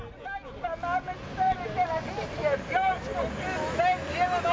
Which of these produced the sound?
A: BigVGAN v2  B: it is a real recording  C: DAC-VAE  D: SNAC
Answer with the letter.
B